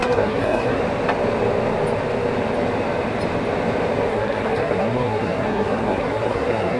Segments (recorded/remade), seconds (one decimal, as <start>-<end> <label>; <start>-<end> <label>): 0.0-0.8 remade; 0.8-4.1 recorded; 4.1-6.8 remade